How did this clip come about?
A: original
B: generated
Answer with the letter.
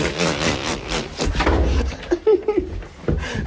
A